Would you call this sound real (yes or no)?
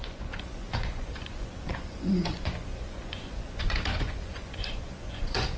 no